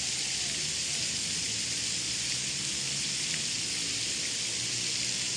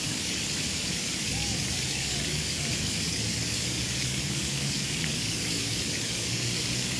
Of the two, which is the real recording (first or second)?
first